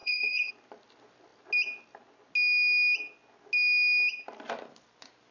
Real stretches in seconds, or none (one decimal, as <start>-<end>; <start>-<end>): 0.5-5.3